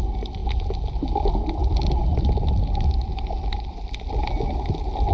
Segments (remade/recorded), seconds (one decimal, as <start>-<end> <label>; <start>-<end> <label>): 0.0-5.1 recorded